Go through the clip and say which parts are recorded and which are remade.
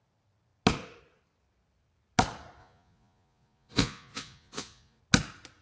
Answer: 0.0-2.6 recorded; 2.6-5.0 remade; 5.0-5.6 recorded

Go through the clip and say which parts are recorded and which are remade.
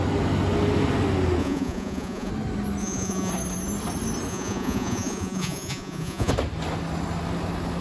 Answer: 0.0-1.4 recorded; 1.4-2.3 remade; 2.3-2.8 recorded; 2.8-3.3 remade; 3.3-4.3 recorded; 4.3-6.3 remade; 6.3-7.8 recorded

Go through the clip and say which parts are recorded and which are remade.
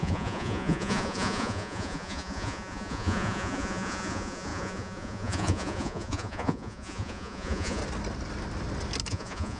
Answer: 0.0-7.8 remade; 7.8-9.1 recorded; 9.1-9.6 remade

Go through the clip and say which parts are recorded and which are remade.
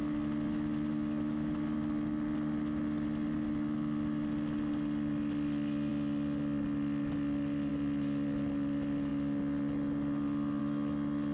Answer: 0.0-11.3 recorded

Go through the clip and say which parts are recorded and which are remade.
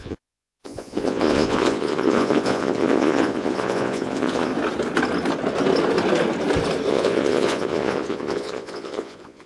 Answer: 0.0-4.5 remade; 4.5-6.9 recorded; 6.9-9.5 remade